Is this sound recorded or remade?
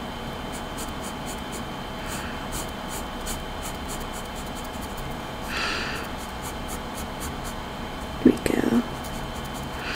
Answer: recorded